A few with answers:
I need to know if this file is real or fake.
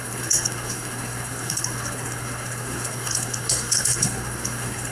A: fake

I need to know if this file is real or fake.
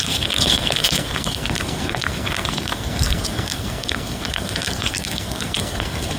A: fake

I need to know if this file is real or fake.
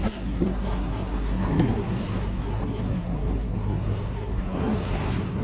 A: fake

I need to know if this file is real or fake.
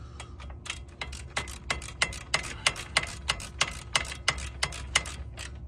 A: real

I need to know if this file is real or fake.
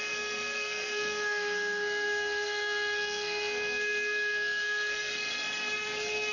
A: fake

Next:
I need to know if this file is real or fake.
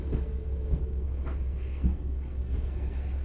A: fake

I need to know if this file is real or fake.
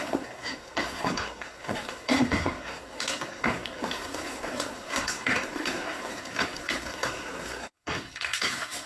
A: fake